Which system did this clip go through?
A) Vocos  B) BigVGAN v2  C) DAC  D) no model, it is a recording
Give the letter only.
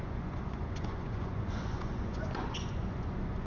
A